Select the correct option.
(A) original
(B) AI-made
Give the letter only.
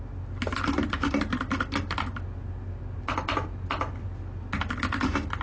A